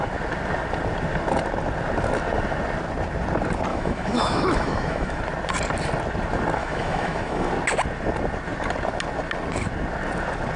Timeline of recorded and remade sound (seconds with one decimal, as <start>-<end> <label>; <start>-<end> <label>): 0.0-3.7 recorded; 3.7-5.2 remade; 5.2-6.6 recorded; 6.6-7.5 remade; 7.5-10.6 recorded

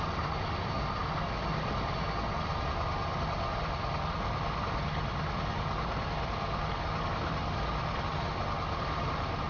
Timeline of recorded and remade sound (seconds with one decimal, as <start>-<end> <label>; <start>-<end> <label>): 0.0-9.5 recorded

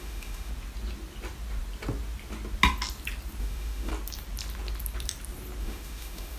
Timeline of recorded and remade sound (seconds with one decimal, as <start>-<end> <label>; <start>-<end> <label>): 0.0-0.5 remade; 0.5-3.4 recorded; 3.4-3.9 remade; 3.9-5.6 recorded; 5.6-6.4 remade

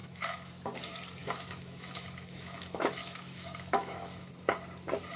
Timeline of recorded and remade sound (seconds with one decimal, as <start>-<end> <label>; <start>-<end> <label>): 0.0-0.5 remade; 0.5-1.2 recorded; 1.2-4.3 remade; 4.3-5.2 recorded